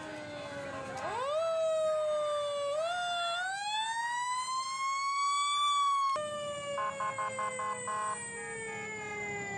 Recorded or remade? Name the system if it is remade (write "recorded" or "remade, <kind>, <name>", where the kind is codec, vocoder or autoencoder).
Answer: recorded